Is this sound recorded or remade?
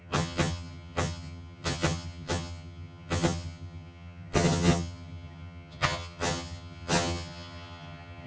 remade